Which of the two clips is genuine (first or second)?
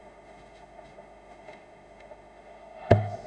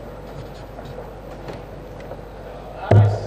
second